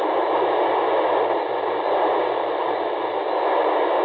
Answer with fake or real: real